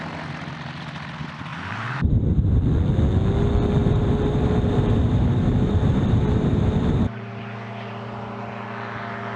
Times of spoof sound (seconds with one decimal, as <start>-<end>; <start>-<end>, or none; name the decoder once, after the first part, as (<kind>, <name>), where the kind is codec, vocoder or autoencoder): 1.5-2.6 (vocoder, BigVGAN v2); 3.8-8.5